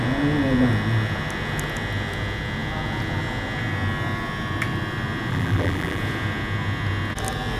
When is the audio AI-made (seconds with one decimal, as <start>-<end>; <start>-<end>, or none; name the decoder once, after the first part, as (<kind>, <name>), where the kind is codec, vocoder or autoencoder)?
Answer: 5.3-6.0 (vocoder, BigVGAN v2)